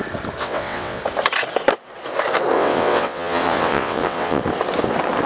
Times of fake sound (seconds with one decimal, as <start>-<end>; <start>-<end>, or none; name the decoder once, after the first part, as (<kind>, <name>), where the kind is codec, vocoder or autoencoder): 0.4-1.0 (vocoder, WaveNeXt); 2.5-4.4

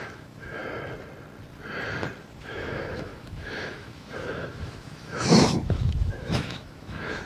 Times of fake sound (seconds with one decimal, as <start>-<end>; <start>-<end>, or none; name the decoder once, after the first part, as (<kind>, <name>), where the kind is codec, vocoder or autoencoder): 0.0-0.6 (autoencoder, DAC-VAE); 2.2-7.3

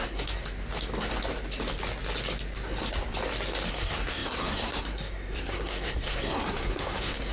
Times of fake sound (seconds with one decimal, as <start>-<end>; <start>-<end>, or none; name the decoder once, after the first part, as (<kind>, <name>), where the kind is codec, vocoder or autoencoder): 0.0-0.4 (codec, SNAC); 3.7-7.3

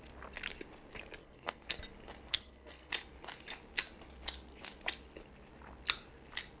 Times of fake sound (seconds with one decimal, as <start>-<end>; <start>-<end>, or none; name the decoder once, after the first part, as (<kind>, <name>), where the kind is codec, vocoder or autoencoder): 1.2-1.8 (codec, SNAC); 2.3-2.9

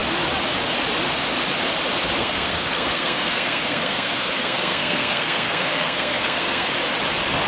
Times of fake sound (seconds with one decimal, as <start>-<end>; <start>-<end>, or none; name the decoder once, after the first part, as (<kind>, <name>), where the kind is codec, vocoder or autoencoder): 2.2-6.7 (codec, SNAC)

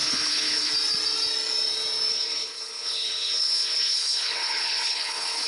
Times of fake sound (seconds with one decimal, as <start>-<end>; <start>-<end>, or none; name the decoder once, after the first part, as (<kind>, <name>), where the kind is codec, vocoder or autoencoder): 0.0-0.7 (codec, HILCodec); 2.1-5.5